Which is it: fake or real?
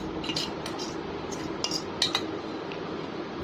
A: real